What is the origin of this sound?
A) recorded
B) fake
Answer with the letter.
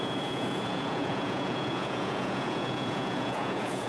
B